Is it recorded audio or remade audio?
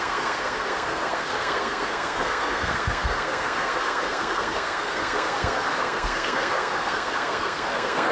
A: remade